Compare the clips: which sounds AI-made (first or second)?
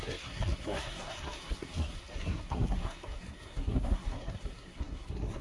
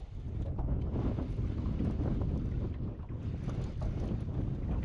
first